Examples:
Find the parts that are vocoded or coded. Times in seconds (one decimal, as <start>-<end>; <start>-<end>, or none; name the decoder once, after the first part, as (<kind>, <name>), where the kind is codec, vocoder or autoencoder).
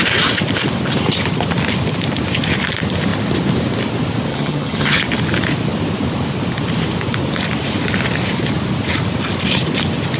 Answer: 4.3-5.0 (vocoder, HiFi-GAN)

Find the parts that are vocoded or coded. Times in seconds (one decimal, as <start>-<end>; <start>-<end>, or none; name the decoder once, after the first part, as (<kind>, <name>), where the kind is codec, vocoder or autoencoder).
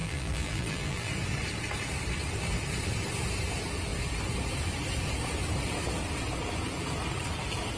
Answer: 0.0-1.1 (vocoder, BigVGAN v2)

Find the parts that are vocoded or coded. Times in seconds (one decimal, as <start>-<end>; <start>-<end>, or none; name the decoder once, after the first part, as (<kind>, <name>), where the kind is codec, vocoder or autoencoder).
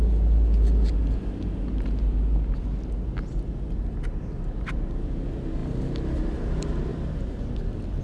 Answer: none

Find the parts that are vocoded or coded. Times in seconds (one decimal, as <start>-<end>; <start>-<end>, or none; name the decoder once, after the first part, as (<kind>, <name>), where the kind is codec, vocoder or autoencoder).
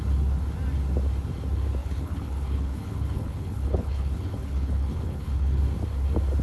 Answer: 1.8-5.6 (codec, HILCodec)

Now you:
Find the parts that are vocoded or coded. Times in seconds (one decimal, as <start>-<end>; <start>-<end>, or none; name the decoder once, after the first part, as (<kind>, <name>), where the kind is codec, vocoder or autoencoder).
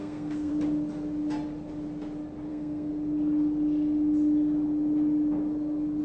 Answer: 0.0-0.5 (codec, SNAC); 2.5-2.9